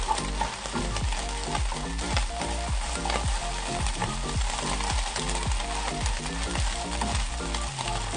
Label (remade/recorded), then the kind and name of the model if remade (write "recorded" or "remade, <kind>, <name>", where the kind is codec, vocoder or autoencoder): recorded